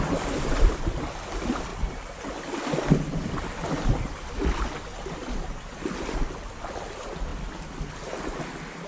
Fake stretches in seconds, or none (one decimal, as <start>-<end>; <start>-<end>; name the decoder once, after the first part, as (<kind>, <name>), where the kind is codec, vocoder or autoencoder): 5.2-5.8 (vocoder, BigVGAN v2)